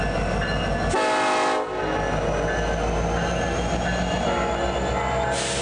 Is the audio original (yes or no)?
yes